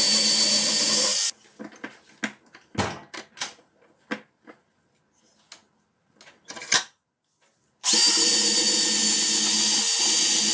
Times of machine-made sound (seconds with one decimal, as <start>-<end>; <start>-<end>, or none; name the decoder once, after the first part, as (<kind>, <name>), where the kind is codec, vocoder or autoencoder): none